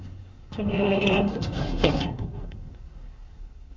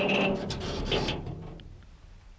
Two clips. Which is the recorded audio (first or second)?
second